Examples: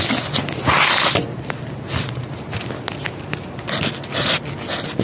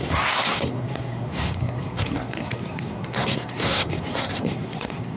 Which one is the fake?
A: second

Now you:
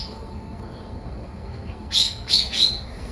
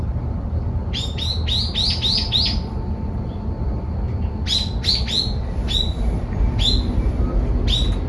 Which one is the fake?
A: first